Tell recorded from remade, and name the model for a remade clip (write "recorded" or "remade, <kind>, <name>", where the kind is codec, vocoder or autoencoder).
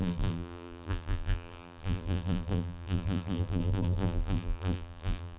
remade, vocoder, BigVGAN v2